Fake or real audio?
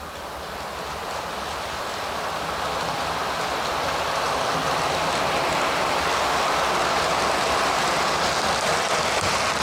real